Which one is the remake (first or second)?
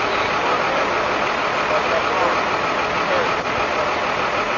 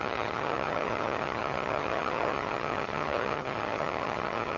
second